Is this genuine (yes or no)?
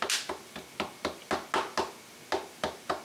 yes